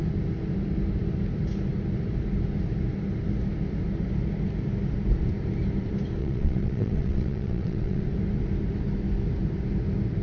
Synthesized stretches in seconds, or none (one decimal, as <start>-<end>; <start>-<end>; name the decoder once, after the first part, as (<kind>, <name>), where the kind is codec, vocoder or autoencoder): 6.2-8.0 (vocoder, WaveNeXt)